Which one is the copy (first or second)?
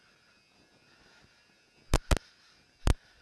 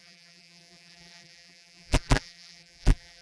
second